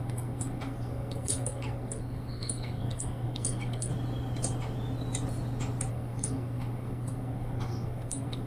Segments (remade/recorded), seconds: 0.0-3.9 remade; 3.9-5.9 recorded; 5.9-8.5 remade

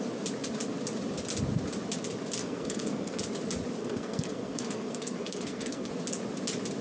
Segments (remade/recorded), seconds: 0.0-2.4 recorded; 2.4-3.2 remade; 3.2-3.8 recorded; 3.8-5.9 remade; 5.9-6.8 recorded

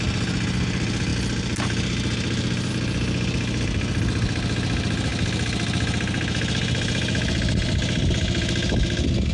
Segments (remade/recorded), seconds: 0.0-9.3 recorded